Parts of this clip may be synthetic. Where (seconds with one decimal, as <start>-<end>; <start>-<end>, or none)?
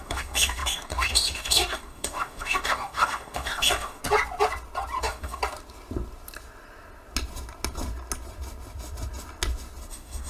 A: 0.0-4.0; 5.0-5.4; 9.9-10.3